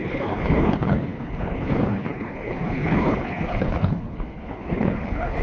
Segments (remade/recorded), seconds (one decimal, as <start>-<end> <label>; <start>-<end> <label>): 0.0-5.4 remade